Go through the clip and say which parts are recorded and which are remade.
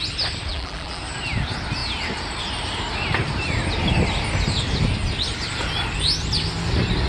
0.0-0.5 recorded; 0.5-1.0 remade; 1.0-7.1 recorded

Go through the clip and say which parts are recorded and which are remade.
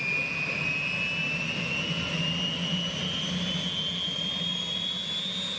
0.0-5.6 recorded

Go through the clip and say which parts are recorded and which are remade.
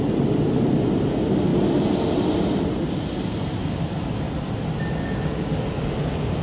0.0-6.4 recorded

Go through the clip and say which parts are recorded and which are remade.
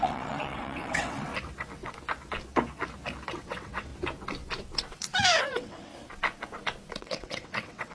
0.0-1.3 remade; 1.3-3.3 recorded; 3.3-3.9 remade; 3.9-5.4 recorded; 5.4-5.9 remade; 5.9-7.0 recorded; 7.0-7.9 remade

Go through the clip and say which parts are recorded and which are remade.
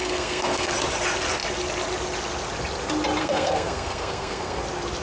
0.0-0.7 remade; 0.7-3.2 recorded; 3.2-4.6 remade; 4.6-5.0 recorded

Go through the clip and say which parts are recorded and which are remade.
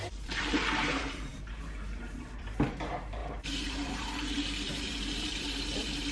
0.0-6.1 remade